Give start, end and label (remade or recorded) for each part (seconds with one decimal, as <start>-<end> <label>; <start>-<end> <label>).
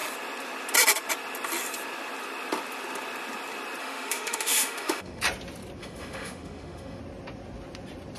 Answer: 0.0-3.8 recorded; 3.8-5.2 remade; 5.2-5.8 recorded; 5.8-7.0 remade; 7.0-8.2 recorded